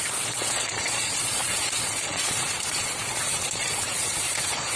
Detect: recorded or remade remade